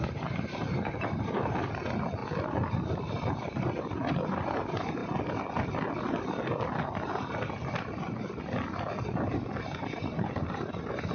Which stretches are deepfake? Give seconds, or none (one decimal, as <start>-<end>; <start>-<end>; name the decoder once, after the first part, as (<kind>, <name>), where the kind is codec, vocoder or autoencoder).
0.0-2.2 (vocoder, BigVGAN v2); 3.3-5.0; 9.6-11.1